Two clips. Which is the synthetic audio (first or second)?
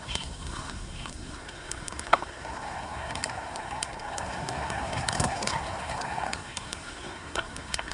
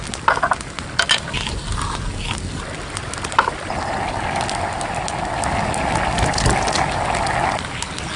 first